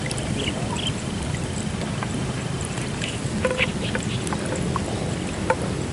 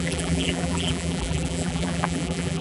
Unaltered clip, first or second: first